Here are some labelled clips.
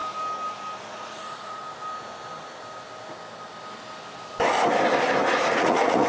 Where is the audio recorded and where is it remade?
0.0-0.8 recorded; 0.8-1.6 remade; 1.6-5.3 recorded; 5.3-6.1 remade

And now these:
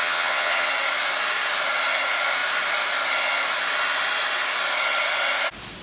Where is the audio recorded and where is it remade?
0.0-0.7 remade; 0.7-5.8 recorded

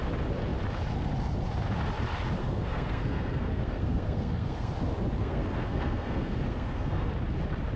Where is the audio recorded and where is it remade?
0.0-2.4 recorded; 2.4-4.7 remade; 4.7-5.2 recorded; 5.2-7.1 remade; 7.1-7.8 recorded

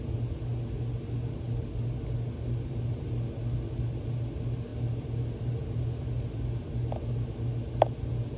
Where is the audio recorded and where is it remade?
0.0-8.4 recorded